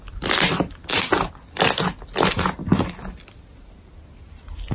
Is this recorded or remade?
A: recorded